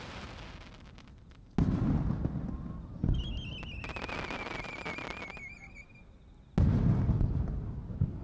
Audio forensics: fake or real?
real